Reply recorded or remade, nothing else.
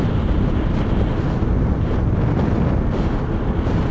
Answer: recorded